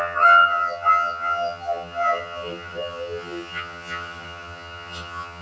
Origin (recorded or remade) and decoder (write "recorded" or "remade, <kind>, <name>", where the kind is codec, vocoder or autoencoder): remade, vocoder, HiFi-GAN